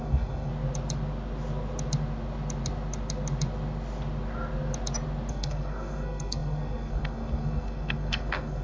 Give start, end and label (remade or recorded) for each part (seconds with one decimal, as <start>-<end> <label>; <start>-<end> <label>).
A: 0.0-0.5 remade; 0.5-5.3 recorded; 5.3-8.6 remade